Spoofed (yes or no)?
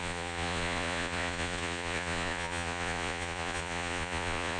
yes